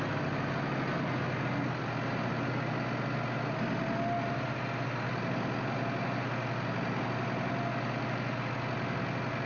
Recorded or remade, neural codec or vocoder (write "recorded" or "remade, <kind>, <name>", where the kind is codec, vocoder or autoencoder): recorded